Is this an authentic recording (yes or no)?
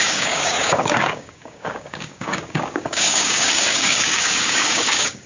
no